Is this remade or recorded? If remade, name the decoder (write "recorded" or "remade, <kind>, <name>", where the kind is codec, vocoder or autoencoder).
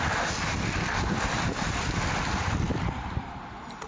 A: remade, vocoder, BigVGAN v2